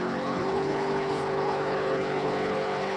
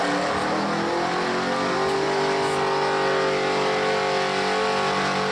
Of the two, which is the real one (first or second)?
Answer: second